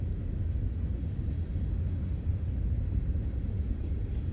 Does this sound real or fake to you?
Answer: real